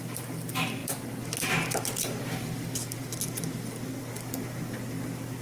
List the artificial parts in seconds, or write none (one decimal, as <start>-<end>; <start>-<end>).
none